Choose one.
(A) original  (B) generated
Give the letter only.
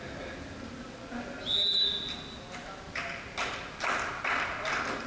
A